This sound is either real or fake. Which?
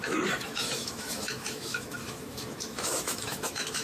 fake